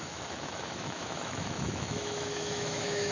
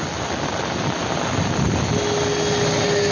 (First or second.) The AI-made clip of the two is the first